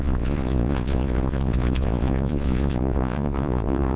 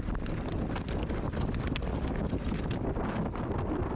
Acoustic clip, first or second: second